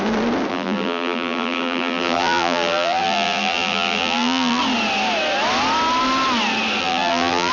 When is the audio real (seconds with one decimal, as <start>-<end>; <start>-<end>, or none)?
0.0-0.5; 4.6-6.8